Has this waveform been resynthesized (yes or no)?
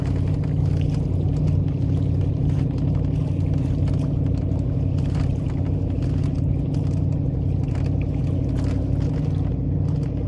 no